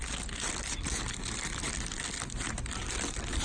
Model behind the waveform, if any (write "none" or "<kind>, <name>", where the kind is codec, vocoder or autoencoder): none